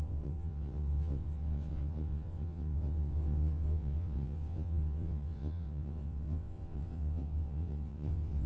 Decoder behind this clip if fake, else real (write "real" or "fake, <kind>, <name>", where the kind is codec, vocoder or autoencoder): fake, vocoder, WaveNeXt